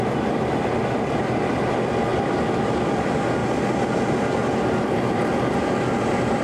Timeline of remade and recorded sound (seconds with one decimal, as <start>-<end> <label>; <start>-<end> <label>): 0.0-6.4 recorded